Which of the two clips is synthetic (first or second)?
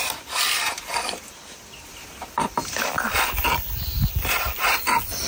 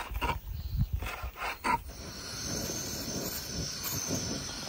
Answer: first